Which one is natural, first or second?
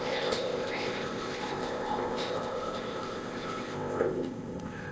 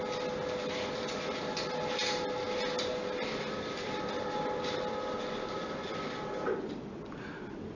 second